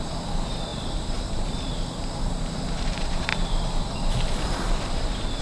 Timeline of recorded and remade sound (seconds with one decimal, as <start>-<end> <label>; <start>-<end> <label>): 0.0-3.3 remade; 3.3-3.8 recorded; 3.8-5.4 remade